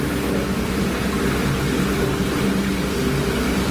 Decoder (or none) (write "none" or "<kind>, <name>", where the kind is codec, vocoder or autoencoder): none